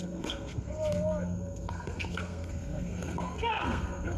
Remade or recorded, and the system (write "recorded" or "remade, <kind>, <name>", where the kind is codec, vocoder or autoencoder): remade, codec, SNAC